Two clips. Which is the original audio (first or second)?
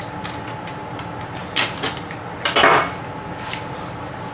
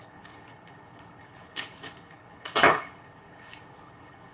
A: first